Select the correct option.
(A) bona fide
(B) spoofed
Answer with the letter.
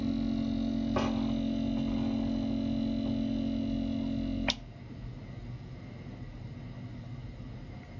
A